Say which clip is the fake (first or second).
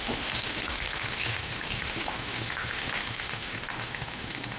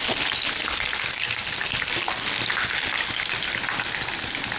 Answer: first